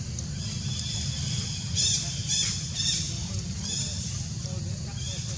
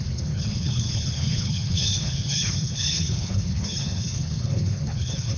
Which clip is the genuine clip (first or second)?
first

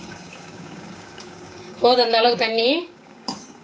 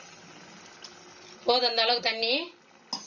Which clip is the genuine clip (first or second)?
second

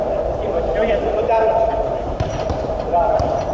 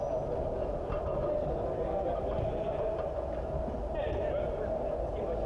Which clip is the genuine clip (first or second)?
second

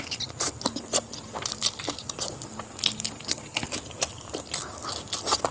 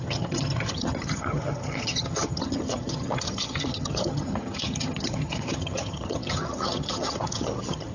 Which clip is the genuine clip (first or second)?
first